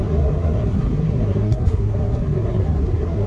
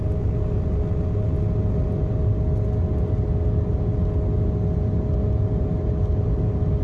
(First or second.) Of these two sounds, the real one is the second